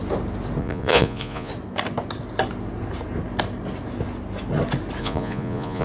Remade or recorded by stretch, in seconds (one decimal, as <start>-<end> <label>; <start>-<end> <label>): 0.0-0.6 recorded; 0.6-1.5 remade; 1.5-5.0 recorded; 5.0-5.8 remade